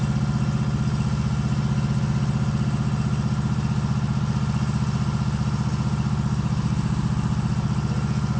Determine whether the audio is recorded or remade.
recorded